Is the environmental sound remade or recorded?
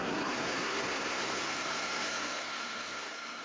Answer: remade